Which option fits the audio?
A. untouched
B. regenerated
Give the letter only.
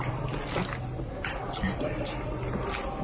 A